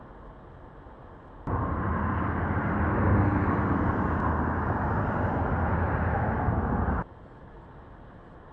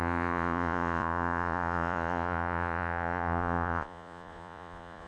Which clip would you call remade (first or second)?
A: second